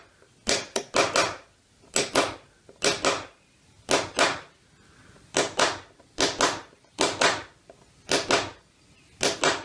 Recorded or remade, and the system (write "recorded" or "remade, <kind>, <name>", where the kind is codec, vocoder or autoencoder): recorded